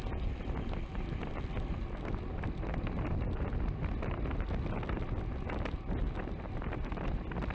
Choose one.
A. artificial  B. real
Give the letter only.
B